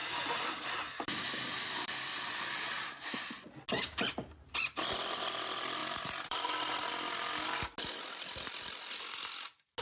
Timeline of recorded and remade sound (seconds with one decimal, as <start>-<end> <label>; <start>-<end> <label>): 0.0-3.5 remade; 3.5-5.8 recorded; 5.8-6.9 remade; 6.9-9.8 recorded